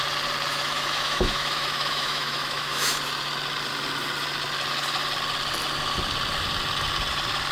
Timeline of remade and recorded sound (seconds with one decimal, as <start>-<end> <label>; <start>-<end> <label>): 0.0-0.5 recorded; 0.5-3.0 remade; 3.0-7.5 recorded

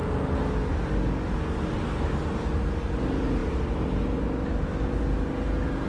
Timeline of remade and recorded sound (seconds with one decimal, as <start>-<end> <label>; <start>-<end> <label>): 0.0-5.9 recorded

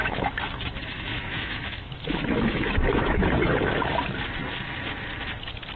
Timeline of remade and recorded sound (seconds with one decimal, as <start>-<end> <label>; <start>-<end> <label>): 0.0-3.5 remade; 3.5-5.8 recorded

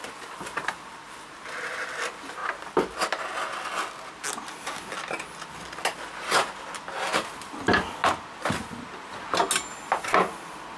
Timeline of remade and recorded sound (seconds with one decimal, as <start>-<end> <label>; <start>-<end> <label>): 0.0-10.8 recorded

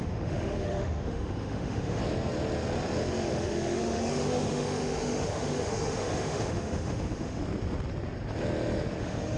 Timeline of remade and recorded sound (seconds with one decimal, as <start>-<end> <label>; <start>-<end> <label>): 0.0-2.0 remade; 2.0-3.3 recorded; 3.3-7.4 remade; 7.4-9.0 recorded; 9.0-9.4 remade

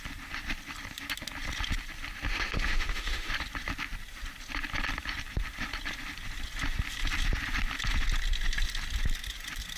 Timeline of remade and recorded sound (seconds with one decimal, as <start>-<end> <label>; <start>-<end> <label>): 0.0-2.3 recorded; 2.3-3.3 remade; 3.3-9.8 recorded

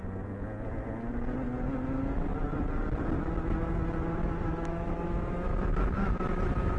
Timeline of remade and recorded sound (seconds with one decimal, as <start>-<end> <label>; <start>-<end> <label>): 0.0-4.1 recorded; 4.1-6.8 remade

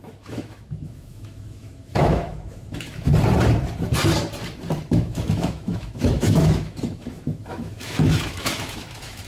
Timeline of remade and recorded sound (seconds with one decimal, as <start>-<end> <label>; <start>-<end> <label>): 0.0-3.1 remade; 3.1-4.9 recorded; 4.9-9.3 remade